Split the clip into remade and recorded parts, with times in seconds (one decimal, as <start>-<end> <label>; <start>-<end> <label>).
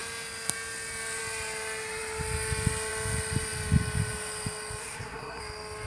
0.0-4.8 recorded; 4.8-5.4 remade; 5.4-5.9 recorded